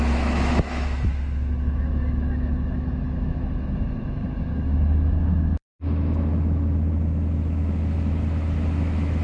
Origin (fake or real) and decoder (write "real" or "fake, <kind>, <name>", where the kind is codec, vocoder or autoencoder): fake, autoencoder, DAC-VAE